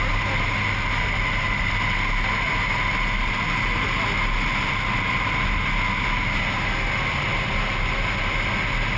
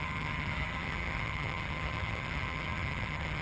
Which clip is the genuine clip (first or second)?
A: first